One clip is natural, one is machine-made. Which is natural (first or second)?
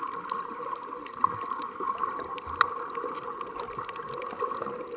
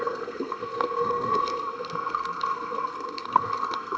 first